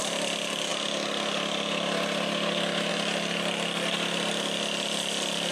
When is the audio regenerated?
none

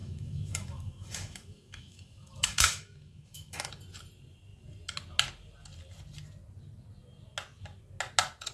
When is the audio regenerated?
0.0-3.7 (autoencoder, DAC-VAE)